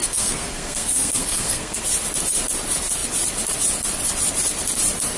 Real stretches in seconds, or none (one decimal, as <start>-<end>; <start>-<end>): 1.8-5.2